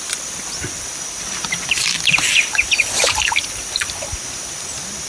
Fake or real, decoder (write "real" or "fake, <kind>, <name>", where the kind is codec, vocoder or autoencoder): real